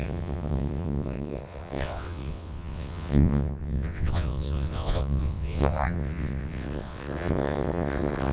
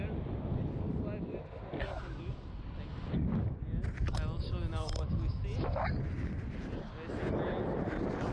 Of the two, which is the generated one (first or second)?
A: first